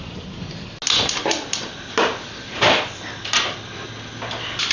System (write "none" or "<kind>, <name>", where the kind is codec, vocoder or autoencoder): none